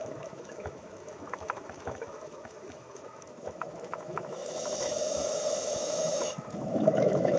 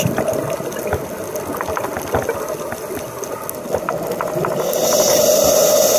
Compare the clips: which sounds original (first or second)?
second